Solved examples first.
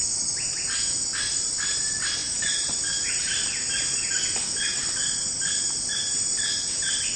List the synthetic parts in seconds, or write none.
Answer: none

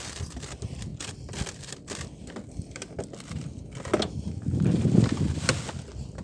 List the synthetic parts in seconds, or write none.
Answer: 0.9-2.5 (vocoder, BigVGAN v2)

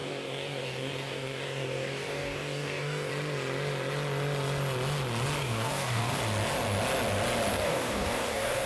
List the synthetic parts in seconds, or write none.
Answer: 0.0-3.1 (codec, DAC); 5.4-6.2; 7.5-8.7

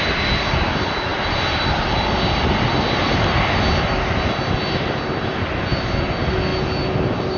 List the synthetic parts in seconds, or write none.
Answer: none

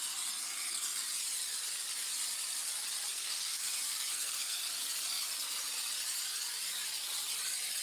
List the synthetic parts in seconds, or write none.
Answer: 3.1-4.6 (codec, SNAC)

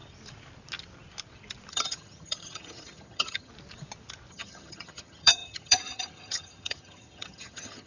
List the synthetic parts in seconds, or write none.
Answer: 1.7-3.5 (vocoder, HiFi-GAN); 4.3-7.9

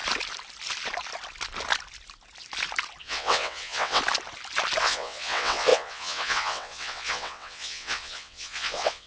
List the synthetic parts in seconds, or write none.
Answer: 3.0-4.0 (vocoder, WaveNeXt); 4.8-9.1

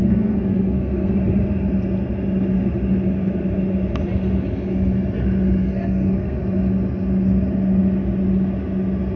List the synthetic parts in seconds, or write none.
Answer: 0.0-1.2 (codec, SNAC); 5.6-6.4